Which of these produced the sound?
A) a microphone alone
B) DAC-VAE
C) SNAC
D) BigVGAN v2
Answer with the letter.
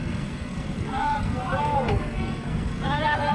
C